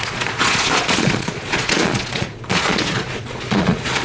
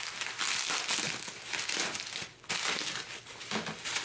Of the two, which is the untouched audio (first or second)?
second